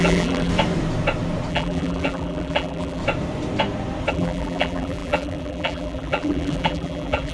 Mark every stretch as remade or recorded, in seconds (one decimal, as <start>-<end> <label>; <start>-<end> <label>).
0.0-0.5 remade; 0.5-1.5 recorded; 1.5-3.0 remade; 3.0-4.1 recorded; 4.1-7.3 remade